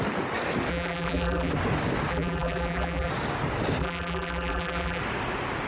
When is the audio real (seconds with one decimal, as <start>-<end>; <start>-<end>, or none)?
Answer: 0.0-0.7; 1.5-2.1; 3.1-3.8; 5.0-5.7